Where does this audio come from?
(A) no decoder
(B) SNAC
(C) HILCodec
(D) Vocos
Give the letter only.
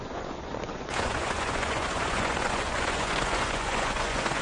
D